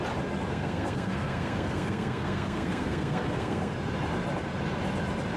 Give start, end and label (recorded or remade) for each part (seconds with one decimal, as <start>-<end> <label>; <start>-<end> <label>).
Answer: 0.0-0.5 recorded; 0.5-3.7 remade; 3.7-5.4 recorded